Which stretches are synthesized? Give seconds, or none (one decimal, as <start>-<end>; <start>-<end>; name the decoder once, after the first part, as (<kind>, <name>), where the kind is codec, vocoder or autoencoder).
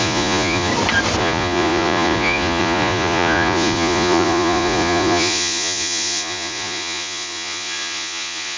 0.0-0.7 (vocoder, Vocos); 1.2-8.6